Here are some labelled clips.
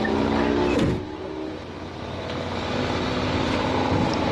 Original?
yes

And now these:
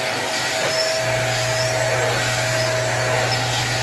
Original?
yes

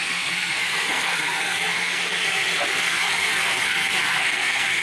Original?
no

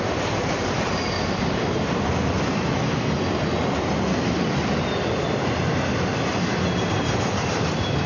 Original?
yes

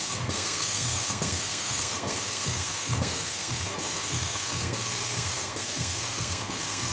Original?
no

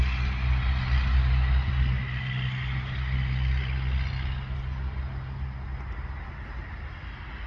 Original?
yes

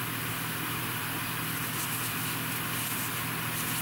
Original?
yes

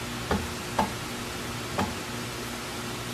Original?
yes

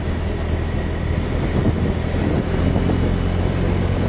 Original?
yes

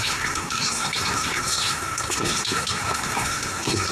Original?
no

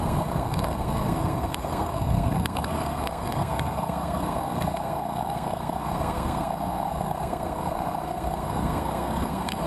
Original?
no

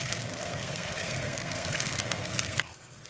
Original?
no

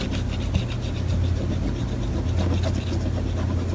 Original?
yes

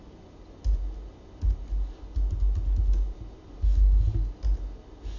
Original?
yes